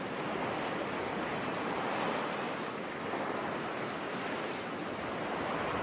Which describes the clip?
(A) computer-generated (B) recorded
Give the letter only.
B